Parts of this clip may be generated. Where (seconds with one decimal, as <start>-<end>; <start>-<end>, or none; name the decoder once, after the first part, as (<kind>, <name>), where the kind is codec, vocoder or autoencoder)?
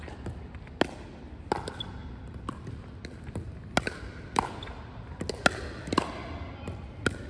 2.0-2.7 (vocoder, BigVGAN v2)